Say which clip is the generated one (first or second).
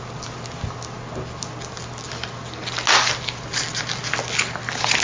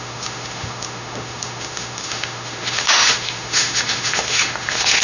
second